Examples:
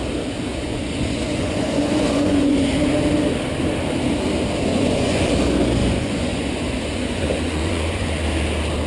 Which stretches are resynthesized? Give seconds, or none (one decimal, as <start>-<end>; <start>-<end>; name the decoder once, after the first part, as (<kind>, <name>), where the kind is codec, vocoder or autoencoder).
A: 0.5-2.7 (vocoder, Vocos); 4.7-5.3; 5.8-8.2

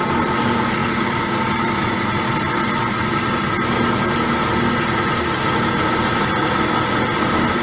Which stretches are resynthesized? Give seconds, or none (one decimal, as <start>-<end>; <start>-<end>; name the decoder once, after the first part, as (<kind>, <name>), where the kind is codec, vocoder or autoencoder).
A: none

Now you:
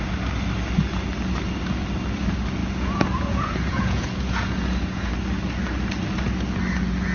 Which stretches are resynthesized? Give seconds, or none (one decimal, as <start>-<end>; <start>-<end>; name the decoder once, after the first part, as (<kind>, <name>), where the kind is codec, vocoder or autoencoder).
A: 2.6-5.1 (vocoder, Vocos)